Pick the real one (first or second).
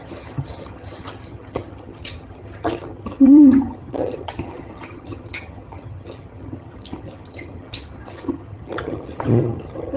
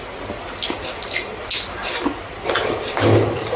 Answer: second